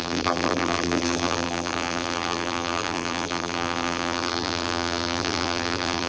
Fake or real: fake